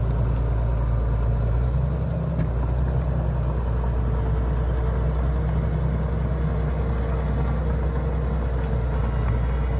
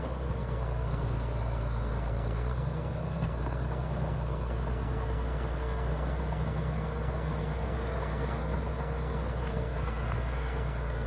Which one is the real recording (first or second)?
first